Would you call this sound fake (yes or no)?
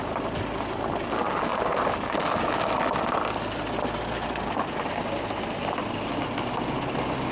no